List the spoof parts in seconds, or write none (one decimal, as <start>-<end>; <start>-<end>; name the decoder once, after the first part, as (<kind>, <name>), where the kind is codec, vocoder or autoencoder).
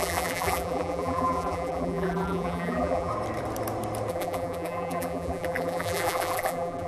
0.0-3.1 (vocoder, BigVGAN v2); 4.1-6.9